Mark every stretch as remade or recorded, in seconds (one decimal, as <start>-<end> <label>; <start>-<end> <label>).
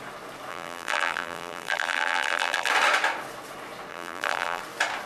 0.0-0.5 recorded; 0.5-2.7 remade; 2.7-3.9 recorded; 3.9-4.6 remade; 4.6-5.1 recorded